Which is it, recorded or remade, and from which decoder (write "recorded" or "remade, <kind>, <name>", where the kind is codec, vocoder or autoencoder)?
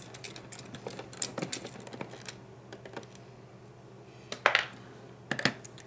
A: recorded